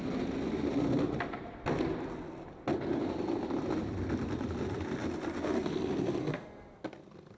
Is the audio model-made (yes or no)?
no